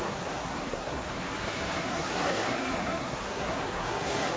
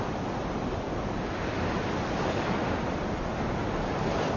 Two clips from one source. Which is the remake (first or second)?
first